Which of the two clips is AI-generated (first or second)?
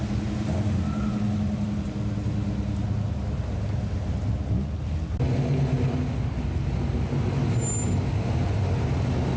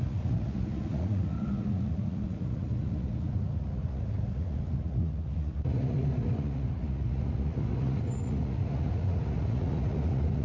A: second